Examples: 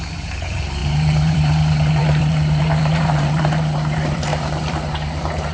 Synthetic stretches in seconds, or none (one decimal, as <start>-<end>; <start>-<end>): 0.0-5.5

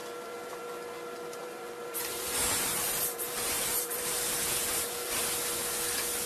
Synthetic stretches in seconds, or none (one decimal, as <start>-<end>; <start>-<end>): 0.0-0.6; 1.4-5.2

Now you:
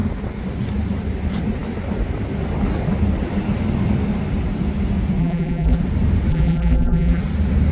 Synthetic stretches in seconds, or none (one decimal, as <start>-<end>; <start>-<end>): 5.2-5.8; 6.3-7.2

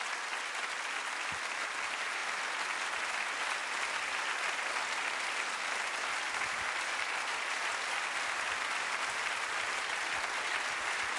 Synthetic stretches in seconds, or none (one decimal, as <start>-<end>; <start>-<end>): none

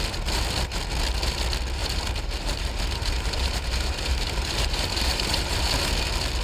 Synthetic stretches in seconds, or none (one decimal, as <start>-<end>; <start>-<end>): 1.8-5.6